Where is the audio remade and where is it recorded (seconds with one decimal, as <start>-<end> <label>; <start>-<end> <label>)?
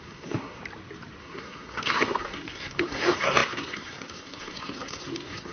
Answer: 0.0-0.6 remade; 0.6-1.2 recorded; 1.2-5.5 remade